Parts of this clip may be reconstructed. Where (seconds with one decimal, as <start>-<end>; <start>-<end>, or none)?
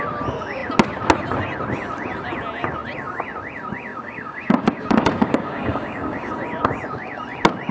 3.9-6.3